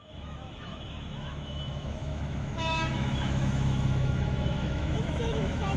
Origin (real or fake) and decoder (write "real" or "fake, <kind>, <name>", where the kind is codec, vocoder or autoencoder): fake, autoencoder, DAC-VAE